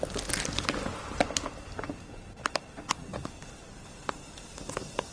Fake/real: real